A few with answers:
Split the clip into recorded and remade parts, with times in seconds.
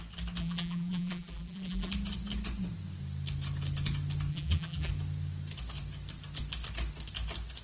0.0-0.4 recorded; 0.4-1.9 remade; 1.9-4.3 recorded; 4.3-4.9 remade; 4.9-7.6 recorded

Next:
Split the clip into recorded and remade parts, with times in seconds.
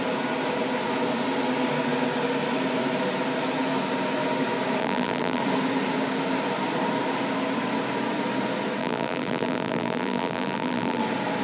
0.0-4.8 recorded; 4.8-5.4 remade; 5.4-8.8 recorded; 8.8-11.0 remade; 11.0-11.4 recorded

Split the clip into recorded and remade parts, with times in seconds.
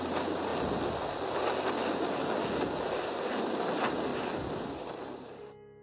0.0-0.5 remade; 0.5-3.4 recorded; 3.4-4.1 remade; 4.1-5.0 recorded; 5.0-5.8 remade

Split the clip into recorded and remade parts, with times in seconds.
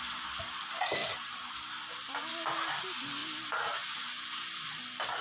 0.0-3.2 remade; 3.2-4.0 recorded; 4.0-5.2 remade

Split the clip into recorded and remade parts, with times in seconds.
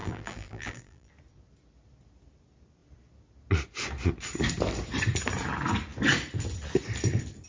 0.0-1.1 remade; 1.1-7.5 recorded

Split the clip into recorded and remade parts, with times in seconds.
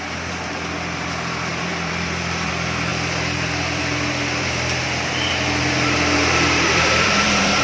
0.0-1.5 recorded; 1.5-2.5 remade; 2.5-2.9 recorded; 2.9-7.6 remade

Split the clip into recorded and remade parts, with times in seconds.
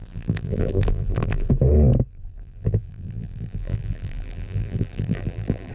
0.0-1.5 remade; 1.5-2.1 recorded; 2.1-5.7 remade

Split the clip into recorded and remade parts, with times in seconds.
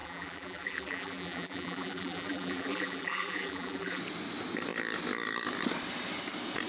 0.0-4.0 remade; 4.0-6.7 recorded